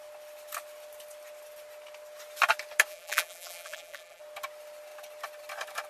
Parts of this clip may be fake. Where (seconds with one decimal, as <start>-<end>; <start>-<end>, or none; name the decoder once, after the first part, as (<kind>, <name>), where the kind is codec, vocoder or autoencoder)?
2.9-4.2 (vocoder, BigVGAN v2)